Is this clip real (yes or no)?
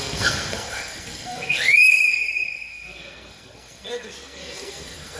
no